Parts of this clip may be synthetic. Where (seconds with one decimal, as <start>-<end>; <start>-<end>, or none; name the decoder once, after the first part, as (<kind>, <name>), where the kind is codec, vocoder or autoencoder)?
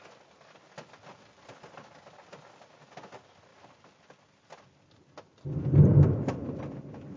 none